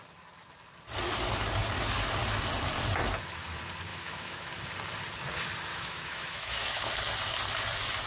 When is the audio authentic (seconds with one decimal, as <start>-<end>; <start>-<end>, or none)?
0.0-3.9; 4.5-5.7; 6.9-8.1